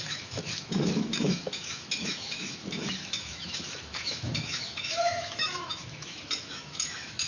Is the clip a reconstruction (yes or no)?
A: yes